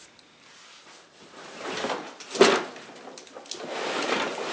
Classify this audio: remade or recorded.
recorded